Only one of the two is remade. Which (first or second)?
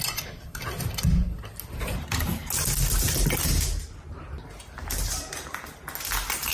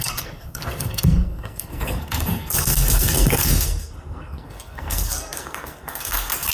second